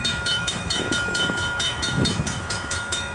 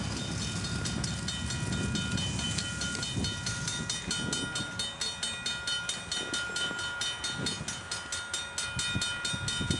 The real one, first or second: second